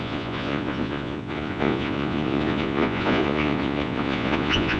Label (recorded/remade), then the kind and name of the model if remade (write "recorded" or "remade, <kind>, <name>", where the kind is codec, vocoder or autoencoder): remade, vocoder, Vocos